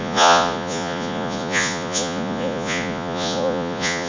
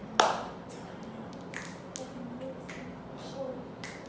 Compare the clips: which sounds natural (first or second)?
second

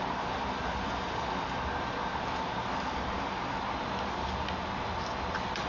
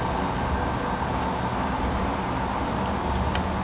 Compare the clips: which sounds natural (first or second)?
second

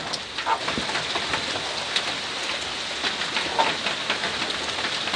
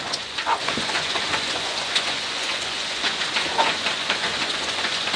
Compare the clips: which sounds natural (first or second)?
first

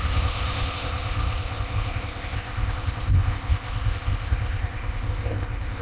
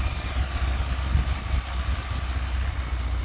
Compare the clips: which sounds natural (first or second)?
second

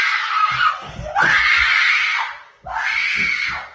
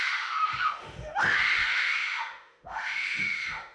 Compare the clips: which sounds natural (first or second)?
first